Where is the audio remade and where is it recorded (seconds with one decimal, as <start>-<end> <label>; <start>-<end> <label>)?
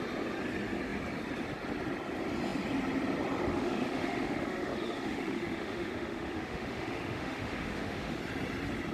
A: 0.0-3.5 recorded; 3.5-8.2 remade; 8.2-8.9 recorded